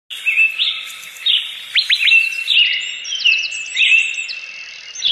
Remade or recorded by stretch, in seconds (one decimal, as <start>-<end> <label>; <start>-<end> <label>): 0.0-1.2 recorded; 1.2-4.2 remade; 4.2-5.1 recorded